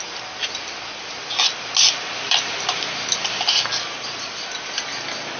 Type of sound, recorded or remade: recorded